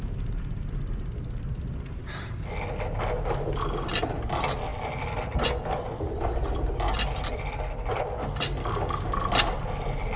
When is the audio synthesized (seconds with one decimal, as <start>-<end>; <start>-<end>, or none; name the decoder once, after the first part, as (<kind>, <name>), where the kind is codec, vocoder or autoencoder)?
8.6-9.1 (codec, DAC)